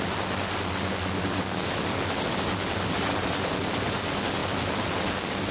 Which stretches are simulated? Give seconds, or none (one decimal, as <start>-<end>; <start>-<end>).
none